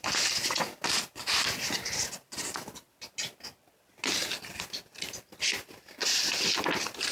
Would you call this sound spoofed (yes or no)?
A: no